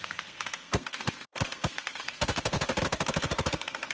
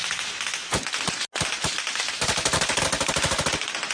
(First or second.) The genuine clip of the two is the second